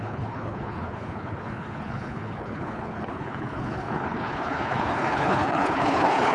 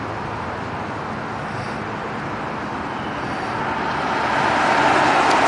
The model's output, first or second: first